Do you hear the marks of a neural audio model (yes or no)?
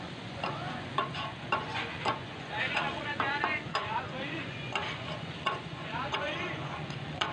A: yes